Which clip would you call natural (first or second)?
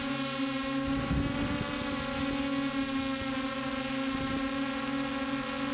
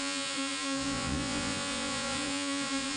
first